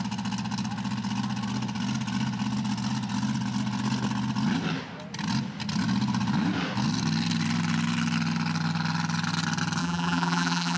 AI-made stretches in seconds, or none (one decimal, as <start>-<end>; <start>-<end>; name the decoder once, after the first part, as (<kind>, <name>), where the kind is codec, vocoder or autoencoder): 9.8-10.8 (vocoder, BigVGAN v2)